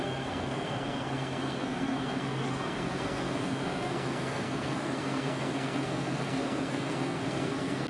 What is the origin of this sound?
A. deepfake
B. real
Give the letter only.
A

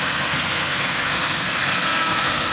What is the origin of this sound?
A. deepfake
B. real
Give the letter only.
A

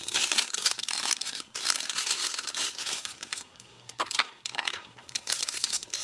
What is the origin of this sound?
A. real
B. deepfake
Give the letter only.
B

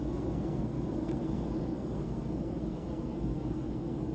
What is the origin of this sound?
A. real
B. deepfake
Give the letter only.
B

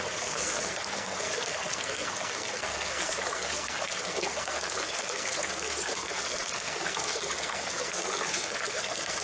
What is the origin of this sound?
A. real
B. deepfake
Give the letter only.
B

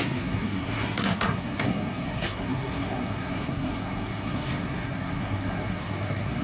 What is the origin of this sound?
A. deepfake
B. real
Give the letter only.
A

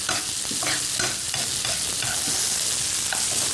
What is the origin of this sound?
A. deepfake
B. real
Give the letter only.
B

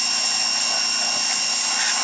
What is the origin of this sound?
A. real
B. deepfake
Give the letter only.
A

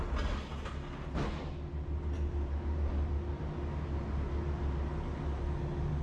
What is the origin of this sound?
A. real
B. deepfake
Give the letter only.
A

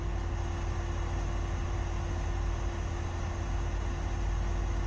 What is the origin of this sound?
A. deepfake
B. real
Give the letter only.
B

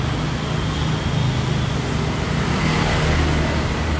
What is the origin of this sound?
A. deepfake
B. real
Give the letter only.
B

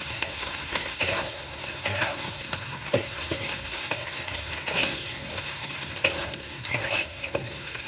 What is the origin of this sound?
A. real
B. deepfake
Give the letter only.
B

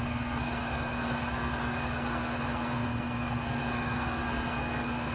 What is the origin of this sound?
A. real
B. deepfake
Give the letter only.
B